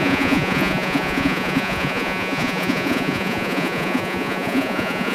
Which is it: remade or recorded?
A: remade